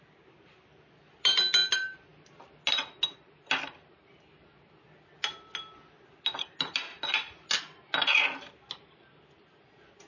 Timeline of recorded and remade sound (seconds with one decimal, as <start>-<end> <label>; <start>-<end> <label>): 0.0-10.1 recorded

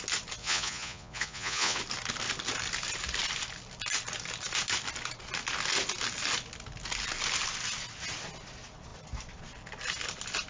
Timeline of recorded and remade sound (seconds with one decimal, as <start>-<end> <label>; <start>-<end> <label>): 0.0-0.4 recorded; 0.4-1.8 remade; 1.8-10.5 recorded